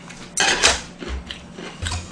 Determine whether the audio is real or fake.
real